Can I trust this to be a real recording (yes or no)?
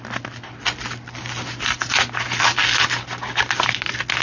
yes